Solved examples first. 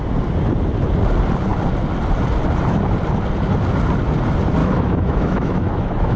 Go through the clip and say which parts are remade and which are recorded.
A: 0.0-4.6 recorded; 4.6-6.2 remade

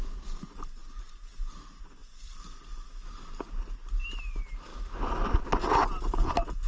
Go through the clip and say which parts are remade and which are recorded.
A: 0.0-6.7 recorded

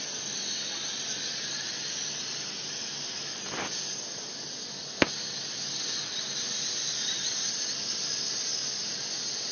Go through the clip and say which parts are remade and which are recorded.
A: 0.0-9.5 recorded

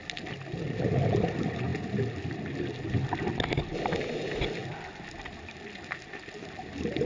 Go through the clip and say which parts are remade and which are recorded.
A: 0.0-7.0 recorded